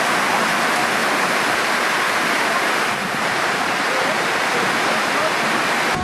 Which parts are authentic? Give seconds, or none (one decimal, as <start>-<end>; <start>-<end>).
0.0-1.0; 4.6-6.0